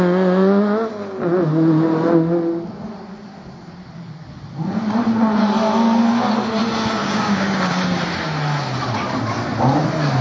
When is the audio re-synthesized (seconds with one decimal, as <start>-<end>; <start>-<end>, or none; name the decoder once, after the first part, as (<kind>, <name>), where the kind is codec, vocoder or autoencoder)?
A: 7.0-7.7 (codec, DAC)